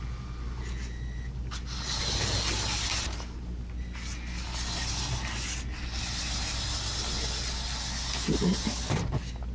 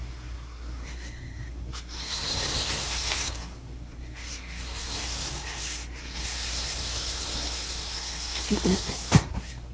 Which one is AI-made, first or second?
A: second